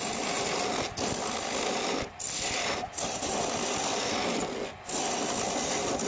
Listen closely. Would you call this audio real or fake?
real